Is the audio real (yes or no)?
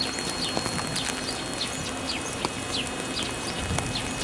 yes